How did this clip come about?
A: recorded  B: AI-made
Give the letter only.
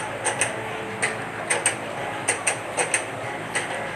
A